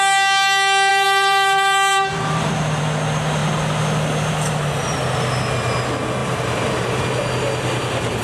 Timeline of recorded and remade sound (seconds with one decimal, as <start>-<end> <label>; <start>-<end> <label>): 0.0-0.9 recorded; 0.9-2.8 remade; 2.8-6.2 recorded; 6.2-7.0 remade; 7.0-8.2 recorded